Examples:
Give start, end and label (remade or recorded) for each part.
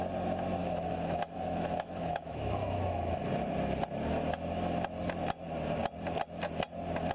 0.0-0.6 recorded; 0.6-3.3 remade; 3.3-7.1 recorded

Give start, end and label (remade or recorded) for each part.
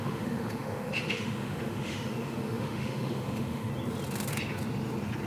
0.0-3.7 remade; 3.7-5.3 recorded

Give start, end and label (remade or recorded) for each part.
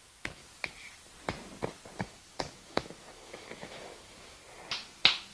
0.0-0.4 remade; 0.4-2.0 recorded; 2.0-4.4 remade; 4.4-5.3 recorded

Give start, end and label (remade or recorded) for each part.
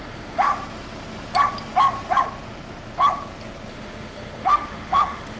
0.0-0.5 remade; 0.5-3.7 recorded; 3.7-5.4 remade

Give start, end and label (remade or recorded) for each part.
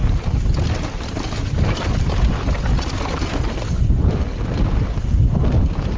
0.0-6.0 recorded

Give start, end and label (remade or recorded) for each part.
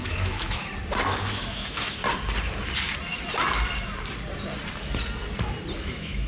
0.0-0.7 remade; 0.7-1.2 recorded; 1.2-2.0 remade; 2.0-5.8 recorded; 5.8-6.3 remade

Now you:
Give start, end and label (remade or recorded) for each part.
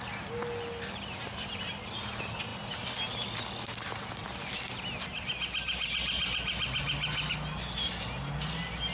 0.0-8.9 recorded